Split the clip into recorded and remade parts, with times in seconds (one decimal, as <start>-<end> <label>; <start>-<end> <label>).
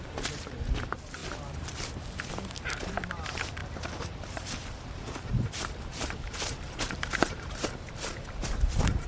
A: 0.0-1.2 remade; 1.2-2.3 recorded; 2.3-9.1 remade